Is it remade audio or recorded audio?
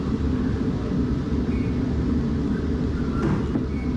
recorded